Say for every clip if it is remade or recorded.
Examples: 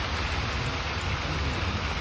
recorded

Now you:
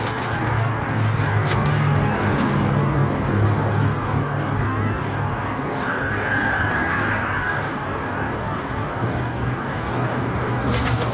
remade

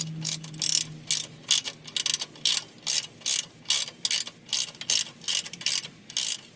recorded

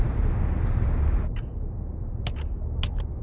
recorded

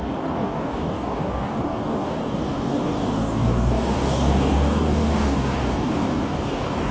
remade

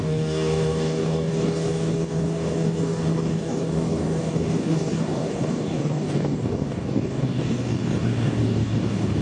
remade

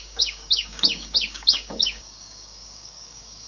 remade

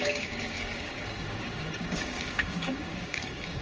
remade